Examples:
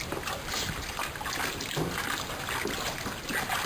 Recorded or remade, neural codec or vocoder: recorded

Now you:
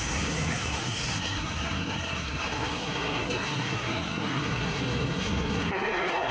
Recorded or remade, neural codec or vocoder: remade, codec, SNAC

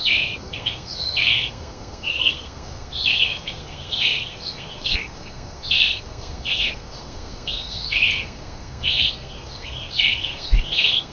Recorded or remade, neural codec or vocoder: remade, codec, SNAC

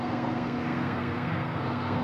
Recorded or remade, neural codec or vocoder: remade, codec, SNAC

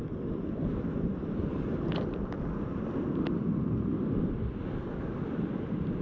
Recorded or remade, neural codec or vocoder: recorded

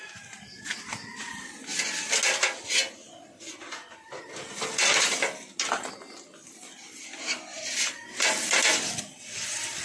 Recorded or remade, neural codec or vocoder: recorded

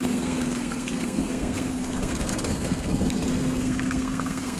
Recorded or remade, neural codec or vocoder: remade, codec, SNAC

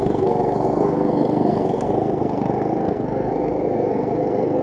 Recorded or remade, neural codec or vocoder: remade, codec, SNAC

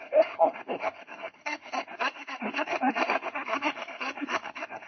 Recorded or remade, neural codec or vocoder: remade, codec, SNAC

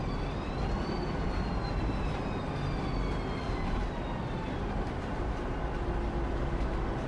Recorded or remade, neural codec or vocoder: recorded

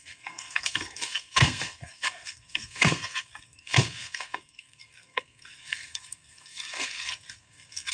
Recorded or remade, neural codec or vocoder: remade, codec, SNAC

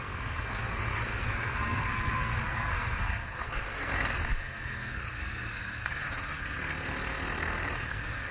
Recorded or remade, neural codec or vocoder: remade, codec, SNAC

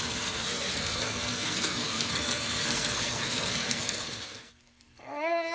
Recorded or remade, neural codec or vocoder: remade, codec, SNAC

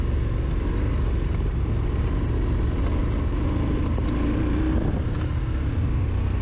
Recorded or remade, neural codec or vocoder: recorded